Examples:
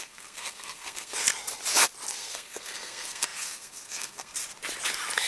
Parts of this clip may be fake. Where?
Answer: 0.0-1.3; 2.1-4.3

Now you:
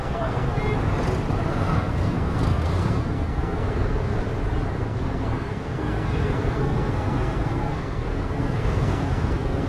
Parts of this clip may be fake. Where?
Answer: 0.0-0.6; 1.5-4.1; 4.8-9.7

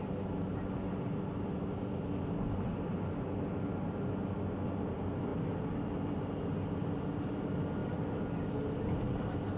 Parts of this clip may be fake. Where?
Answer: none